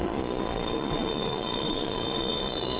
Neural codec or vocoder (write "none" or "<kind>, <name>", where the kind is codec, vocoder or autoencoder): vocoder, Vocos